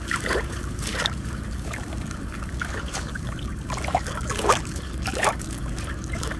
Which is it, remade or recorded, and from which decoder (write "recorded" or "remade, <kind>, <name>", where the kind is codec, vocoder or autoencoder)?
remade, codec, DAC